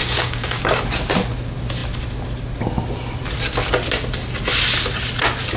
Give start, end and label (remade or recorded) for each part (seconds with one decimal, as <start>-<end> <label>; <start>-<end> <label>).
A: 0.0-0.7 remade; 0.7-5.6 recorded